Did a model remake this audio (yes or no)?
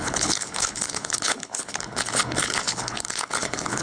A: yes